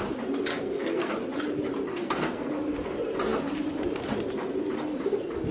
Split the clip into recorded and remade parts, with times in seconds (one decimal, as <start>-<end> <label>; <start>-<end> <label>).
0.0-0.5 recorded; 0.5-1.1 remade; 1.1-1.9 recorded; 1.9-2.5 remade; 2.5-5.5 recorded

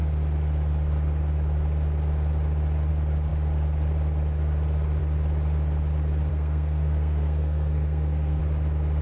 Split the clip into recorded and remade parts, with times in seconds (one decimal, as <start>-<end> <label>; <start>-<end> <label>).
0.0-6.3 recorded; 6.3-8.4 remade; 8.4-9.0 recorded

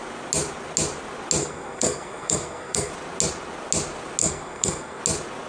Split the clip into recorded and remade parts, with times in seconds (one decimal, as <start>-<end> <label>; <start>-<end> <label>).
0.0-1.4 recorded; 1.4-2.9 remade; 2.9-4.2 recorded; 4.2-5.0 remade; 5.0-5.5 recorded

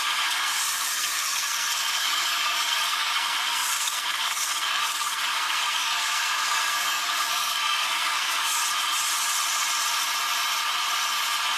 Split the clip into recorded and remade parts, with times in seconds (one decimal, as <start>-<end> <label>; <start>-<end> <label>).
0.0-8.6 remade; 8.6-11.6 recorded